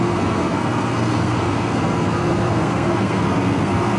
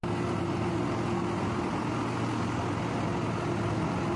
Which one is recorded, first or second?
second